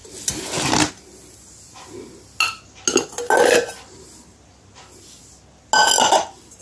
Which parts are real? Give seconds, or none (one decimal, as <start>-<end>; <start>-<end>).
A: 0.0-6.6